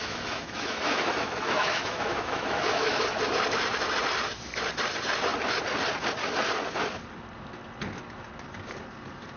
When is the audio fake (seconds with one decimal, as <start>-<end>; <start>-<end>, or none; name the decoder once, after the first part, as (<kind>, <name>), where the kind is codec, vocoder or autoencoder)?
0.0-3.0 (autoencoder, DAC-VAE)